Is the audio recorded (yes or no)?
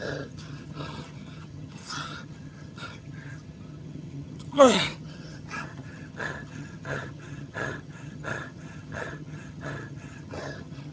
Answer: no